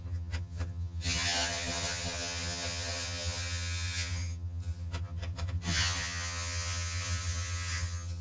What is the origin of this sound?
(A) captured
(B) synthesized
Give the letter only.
B